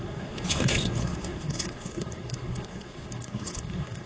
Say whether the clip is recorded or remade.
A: remade